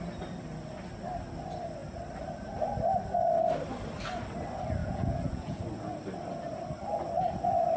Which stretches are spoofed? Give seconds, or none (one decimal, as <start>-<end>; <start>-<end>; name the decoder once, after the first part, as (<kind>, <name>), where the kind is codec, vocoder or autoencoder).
4.8-5.6 (vocoder, Vocos)